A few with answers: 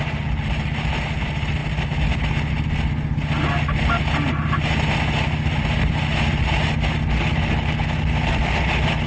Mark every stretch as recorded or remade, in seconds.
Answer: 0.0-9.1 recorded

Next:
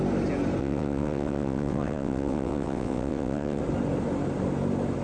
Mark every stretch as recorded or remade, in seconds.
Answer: 0.0-0.6 recorded; 0.6-3.6 remade; 3.6-5.0 recorded